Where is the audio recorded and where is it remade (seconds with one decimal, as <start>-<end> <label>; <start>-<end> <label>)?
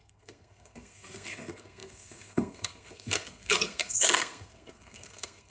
0.0-5.5 remade